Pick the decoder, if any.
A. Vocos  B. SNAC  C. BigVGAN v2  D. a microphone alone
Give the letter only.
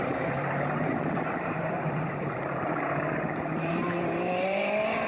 C